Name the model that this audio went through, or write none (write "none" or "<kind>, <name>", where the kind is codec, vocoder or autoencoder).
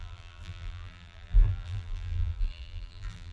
vocoder, BigVGAN v2